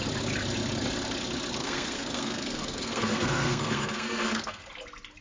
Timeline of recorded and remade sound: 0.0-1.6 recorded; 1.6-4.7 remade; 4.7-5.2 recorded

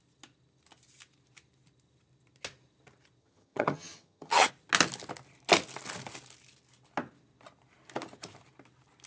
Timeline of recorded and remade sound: 0.0-3.2 recorded; 3.2-4.5 remade; 4.5-9.1 recorded

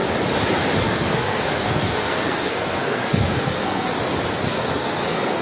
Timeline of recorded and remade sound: 0.0-0.8 recorded; 0.8-3.9 remade; 3.9-4.5 recorded; 4.5-5.4 remade

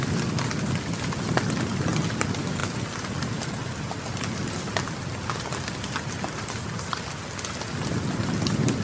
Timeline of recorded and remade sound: 0.0-8.8 recorded

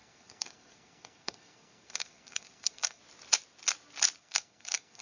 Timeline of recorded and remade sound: 0.0-3.0 remade; 3.0-4.2 recorded; 4.2-5.0 remade

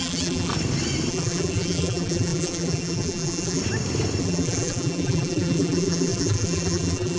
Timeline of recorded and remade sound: 0.0-0.5 remade; 0.5-1.1 recorded; 1.1-3.6 remade; 3.6-4.2 recorded; 4.2-7.2 remade

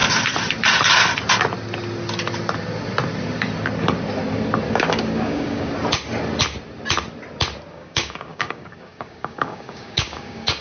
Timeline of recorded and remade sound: 0.0-4.7 recorded; 4.7-5.7 remade; 5.7-7.7 recorded; 7.7-10.6 remade